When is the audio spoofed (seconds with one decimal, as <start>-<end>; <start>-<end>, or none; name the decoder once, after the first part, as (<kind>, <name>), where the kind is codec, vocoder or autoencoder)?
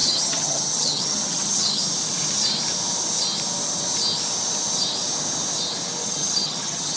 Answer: 0.0-1.8 (vocoder, HiFi-GAN); 6.0-7.0